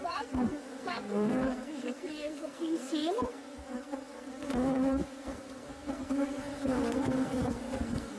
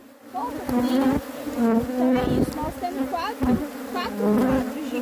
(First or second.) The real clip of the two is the second